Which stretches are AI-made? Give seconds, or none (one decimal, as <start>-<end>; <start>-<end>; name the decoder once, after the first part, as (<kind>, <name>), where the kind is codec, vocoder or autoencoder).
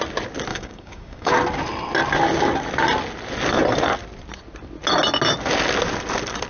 0.5-1.3 (codec, DAC)